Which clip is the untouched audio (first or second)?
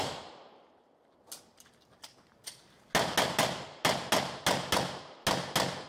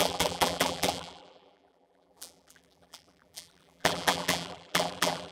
first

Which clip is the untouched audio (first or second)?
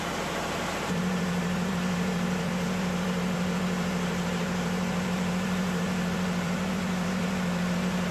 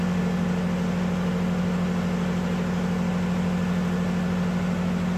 second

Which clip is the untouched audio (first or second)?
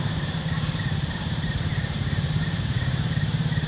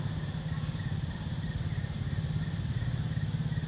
second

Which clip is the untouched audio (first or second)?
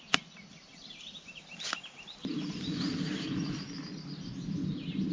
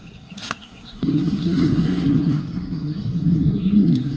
first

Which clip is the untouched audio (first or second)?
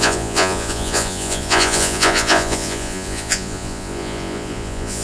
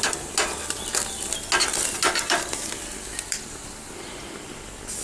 second